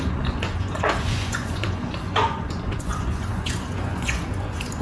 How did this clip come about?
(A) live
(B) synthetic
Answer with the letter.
B